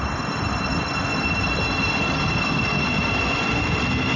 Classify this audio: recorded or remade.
recorded